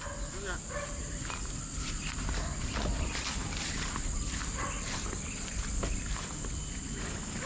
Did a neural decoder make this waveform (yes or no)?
no